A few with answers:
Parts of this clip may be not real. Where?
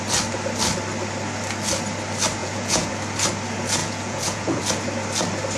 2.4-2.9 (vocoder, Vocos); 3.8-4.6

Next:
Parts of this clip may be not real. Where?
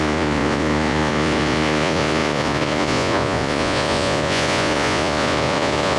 0.0-6.0 (vocoder, Vocos)